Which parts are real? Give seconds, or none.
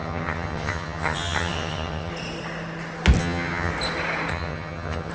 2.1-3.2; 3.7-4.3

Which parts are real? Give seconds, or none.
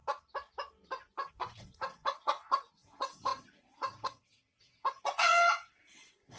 0.0-1.3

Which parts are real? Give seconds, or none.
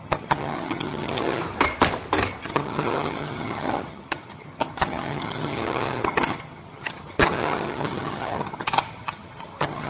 1.4-2.4